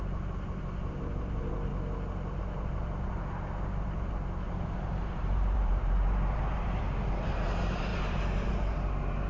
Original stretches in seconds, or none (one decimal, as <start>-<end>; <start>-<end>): 1.7-2.4